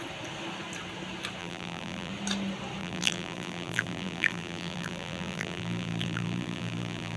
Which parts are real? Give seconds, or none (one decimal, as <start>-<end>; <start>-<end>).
0.0-1.4; 2.1-2.8